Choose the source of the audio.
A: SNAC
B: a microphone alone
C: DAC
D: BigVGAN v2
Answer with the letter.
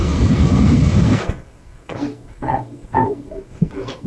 A